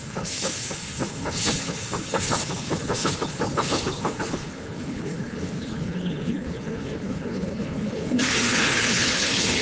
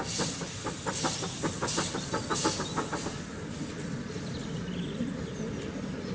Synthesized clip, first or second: first